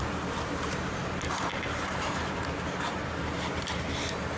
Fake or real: fake